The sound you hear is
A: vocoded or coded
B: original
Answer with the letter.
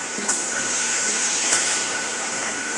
A